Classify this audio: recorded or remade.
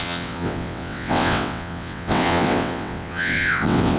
remade